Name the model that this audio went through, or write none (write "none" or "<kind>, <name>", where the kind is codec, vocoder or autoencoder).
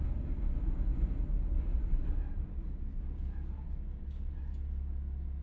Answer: none